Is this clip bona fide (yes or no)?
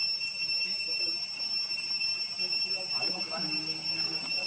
yes